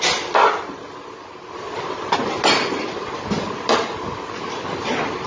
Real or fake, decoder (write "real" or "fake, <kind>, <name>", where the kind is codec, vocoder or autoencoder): real